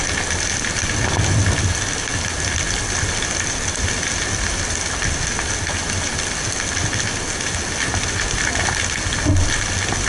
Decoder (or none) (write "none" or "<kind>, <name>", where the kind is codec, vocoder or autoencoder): none